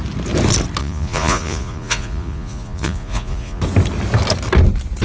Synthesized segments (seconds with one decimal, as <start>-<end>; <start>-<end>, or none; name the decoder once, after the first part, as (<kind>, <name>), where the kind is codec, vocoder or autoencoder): 0.8-3.6 (vocoder, Vocos)